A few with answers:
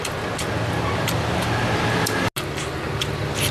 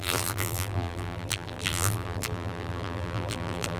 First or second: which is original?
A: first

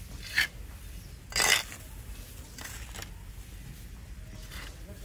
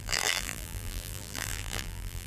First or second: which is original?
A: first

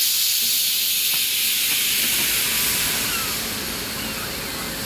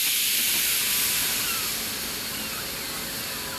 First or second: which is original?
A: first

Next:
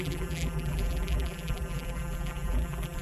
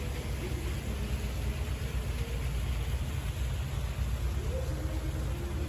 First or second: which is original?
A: second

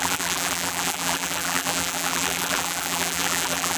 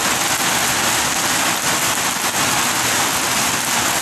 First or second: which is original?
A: second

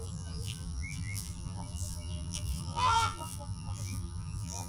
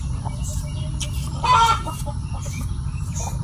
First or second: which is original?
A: second